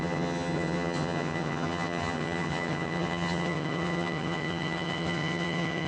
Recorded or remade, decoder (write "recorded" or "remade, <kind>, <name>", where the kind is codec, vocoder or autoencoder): remade, vocoder, HiFi-GAN